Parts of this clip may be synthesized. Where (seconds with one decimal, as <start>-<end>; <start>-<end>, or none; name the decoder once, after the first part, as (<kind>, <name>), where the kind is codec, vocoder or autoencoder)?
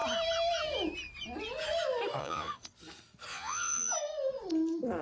2.2-2.7 (vocoder, Vocos); 3.3-3.9